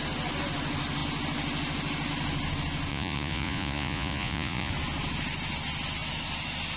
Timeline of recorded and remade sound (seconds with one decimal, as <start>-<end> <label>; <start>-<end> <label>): 0.0-2.9 recorded; 2.9-4.7 remade; 4.7-6.8 recorded